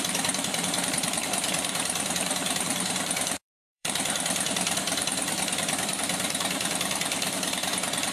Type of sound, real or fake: fake